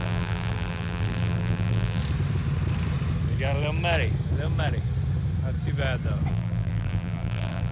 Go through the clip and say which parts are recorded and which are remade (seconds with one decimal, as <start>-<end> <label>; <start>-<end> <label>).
0.0-2.0 remade; 2.0-6.3 recorded; 6.3-7.7 remade